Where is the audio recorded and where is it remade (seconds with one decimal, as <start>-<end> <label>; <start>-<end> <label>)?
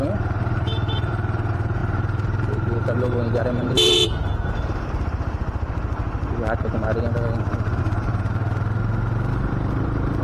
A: 0.0-4.0 remade; 4.0-7.8 recorded; 7.8-8.4 remade; 8.4-9.3 recorded; 9.3-10.2 remade